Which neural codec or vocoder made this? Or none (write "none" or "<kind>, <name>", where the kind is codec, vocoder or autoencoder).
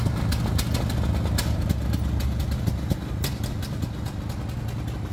none